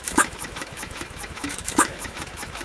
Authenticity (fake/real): fake